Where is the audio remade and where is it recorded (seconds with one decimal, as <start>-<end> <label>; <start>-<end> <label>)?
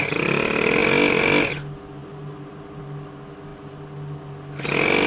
0.0-2.0 recorded; 2.0-2.8 remade; 2.8-5.1 recorded